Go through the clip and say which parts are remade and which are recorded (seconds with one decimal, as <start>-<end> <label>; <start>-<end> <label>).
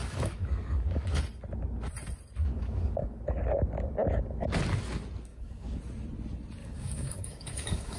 0.0-1.2 remade; 1.2-2.4 recorded; 2.4-3.2 remade; 3.2-5.3 recorded; 5.3-5.8 remade; 5.8-6.6 recorded; 6.6-8.0 remade